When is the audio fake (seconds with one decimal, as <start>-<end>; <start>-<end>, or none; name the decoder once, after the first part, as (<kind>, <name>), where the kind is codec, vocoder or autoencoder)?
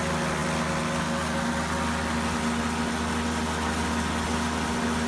none